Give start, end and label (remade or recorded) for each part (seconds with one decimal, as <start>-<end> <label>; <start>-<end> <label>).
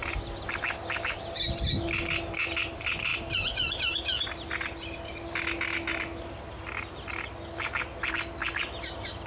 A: 0.0-9.3 recorded